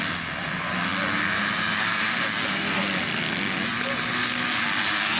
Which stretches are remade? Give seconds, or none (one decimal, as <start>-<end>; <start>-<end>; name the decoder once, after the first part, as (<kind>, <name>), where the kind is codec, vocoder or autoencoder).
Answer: none